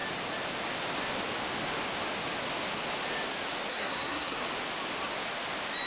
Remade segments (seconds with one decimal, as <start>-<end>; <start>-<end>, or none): 3.7-4.4